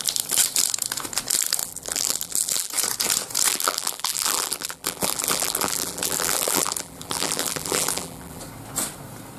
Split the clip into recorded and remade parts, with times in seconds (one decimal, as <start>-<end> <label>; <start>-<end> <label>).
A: 0.0-1.6 recorded; 1.6-2.7 remade; 2.7-3.5 recorded; 3.5-8.4 remade; 8.4-9.4 recorded